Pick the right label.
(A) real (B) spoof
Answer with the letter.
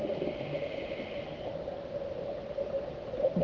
A